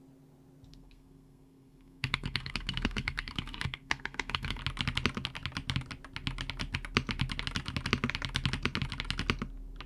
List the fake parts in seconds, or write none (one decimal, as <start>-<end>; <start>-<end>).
0.7-4.6